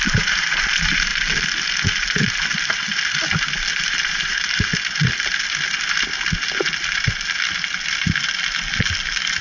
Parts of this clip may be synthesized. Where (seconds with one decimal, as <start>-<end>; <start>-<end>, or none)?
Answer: 0.0-1.1; 4.0-4.7